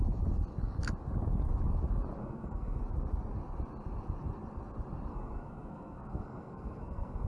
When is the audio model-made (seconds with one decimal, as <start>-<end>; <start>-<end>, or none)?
2.2-2.8; 5.1-7.3